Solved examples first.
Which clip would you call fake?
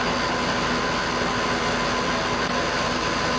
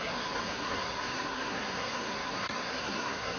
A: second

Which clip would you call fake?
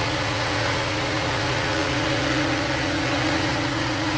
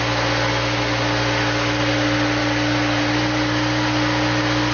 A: first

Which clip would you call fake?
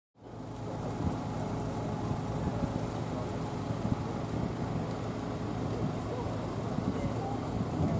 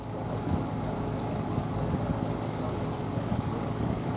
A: second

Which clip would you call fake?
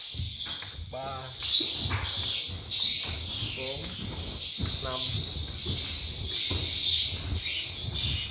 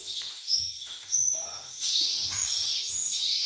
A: second